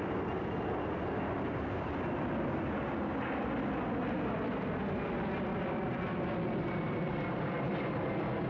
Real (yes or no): yes